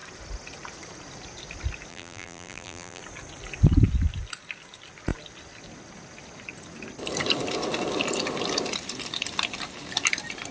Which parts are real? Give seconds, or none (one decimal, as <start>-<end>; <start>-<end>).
0.0-1.9; 3.0-10.5